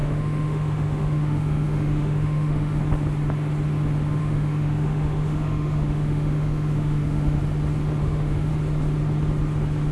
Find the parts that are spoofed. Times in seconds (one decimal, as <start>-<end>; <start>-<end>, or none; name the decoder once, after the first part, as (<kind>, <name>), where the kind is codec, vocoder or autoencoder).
0.0-2.8 (autoencoder, DAC-VAE); 4.2-7.4; 8.0-8.5